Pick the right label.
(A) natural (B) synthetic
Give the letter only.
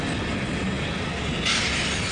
A